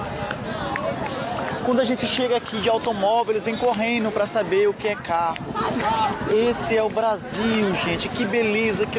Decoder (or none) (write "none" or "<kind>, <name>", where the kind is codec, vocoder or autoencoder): none